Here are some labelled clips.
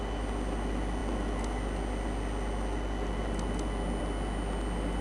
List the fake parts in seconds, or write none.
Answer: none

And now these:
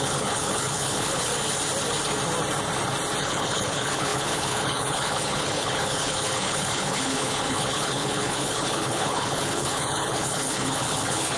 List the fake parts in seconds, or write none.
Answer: 0.0-1.3; 3.2-11.4

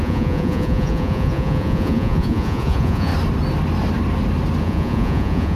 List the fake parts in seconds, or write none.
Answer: 0.0-3.1; 4.6-5.6

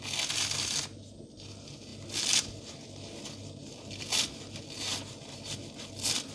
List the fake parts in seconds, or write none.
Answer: 3.6-4.2

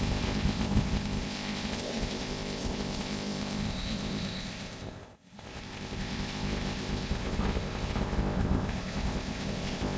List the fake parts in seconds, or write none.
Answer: 0.0-10.0

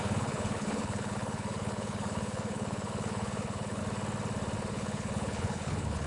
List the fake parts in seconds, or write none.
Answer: 0.0-3.8; 4.7-6.1

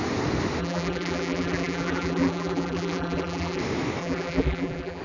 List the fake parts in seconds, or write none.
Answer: 0.6-3.6; 4.0-5.0